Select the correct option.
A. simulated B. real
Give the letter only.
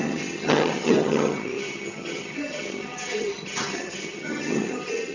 A